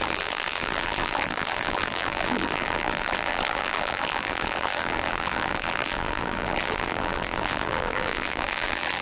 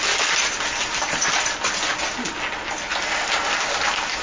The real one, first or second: second